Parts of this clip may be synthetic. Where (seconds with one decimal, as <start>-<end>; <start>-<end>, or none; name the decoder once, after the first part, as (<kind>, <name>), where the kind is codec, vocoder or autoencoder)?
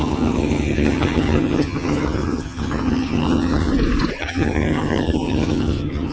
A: 0.0-3.7 (vocoder, HiFi-GAN); 4.2-6.1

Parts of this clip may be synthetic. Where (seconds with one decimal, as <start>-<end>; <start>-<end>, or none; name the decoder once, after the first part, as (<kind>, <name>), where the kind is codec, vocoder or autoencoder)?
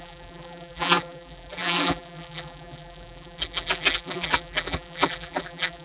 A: 0.0-5.8 (vocoder, BigVGAN v2)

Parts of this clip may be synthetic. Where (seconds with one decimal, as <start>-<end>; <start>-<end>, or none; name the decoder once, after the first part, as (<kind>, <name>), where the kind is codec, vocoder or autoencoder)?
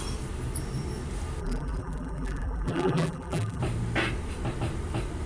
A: 1.4-3.6 (vocoder, BigVGAN v2)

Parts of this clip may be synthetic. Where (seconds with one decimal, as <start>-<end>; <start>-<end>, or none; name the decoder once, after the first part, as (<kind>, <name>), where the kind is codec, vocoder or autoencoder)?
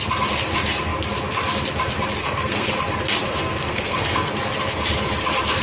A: 2.2-2.7 (codec, SNAC); 3.4-4.3